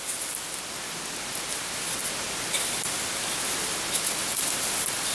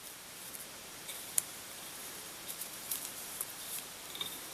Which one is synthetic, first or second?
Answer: second